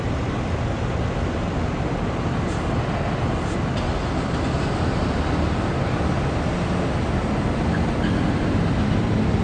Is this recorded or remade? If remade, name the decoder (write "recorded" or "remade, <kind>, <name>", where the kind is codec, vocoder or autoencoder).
recorded